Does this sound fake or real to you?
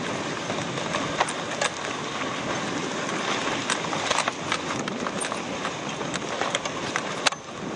real